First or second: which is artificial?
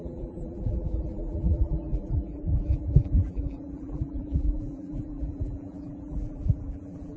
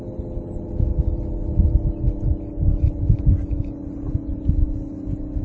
first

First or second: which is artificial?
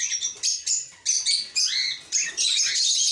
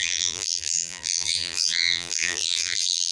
second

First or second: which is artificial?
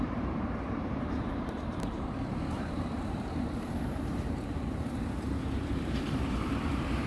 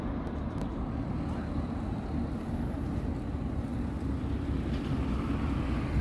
first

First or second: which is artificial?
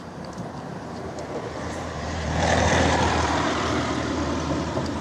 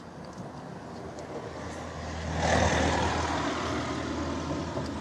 first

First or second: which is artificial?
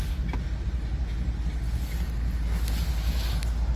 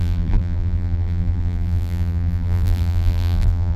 second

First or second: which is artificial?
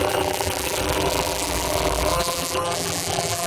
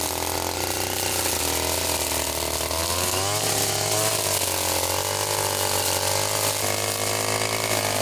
first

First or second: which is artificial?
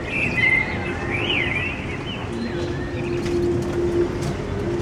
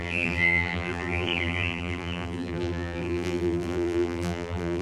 second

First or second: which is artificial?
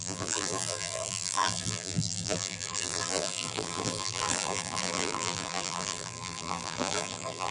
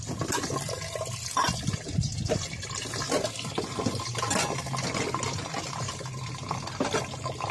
first